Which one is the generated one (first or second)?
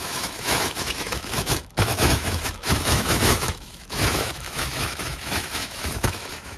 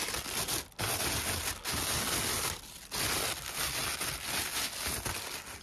first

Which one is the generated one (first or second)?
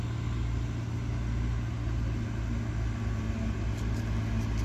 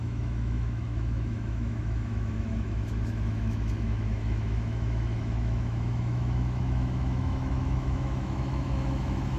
second